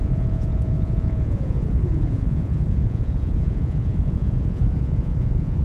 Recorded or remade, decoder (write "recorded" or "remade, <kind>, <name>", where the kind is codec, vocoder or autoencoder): remade, vocoder, Vocos